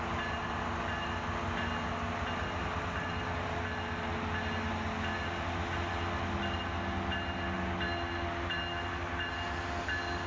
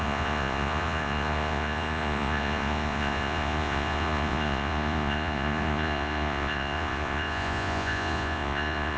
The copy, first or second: second